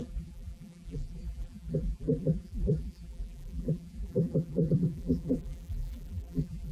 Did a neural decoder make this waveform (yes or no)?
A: yes